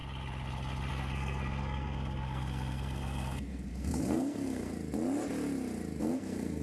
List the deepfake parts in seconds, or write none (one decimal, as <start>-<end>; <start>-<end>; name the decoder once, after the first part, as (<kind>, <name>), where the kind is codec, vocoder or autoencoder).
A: 0.9-4.7 (codec, SNAC); 6.0-6.6